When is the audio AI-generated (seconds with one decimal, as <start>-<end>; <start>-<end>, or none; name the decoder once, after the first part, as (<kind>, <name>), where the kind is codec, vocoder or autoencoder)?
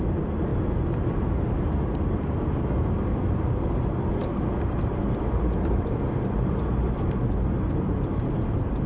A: 4.2-8.4 (vocoder, BigVGAN v2)